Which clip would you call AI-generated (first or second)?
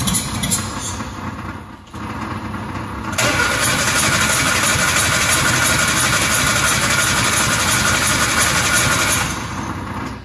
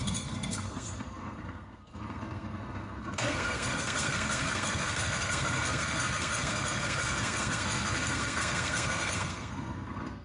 second